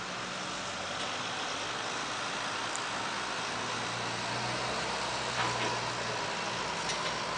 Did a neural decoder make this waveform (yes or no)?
no